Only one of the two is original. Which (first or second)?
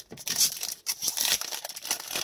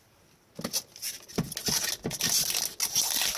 second